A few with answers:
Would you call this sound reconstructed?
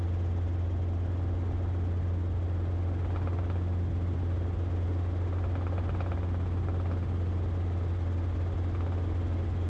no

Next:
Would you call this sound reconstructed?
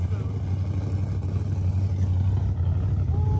no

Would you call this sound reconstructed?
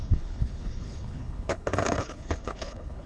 yes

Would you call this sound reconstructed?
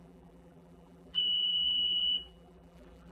yes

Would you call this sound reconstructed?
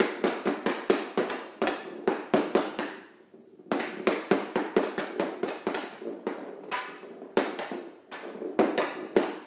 yes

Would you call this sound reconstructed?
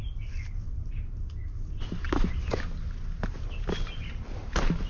no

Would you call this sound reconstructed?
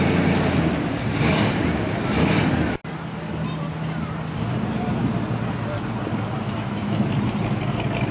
no